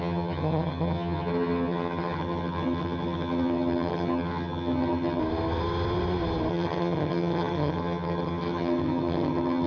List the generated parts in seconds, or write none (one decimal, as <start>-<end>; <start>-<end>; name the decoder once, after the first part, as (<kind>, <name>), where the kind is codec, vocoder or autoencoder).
0.0-5.2 (vocoder, HiFi-GAN); 6.5-9.7